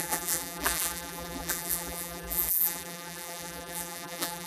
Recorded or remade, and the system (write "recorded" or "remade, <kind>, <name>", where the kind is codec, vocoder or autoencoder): remade, vocoder, BigVGAN v2